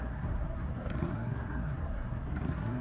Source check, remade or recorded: remade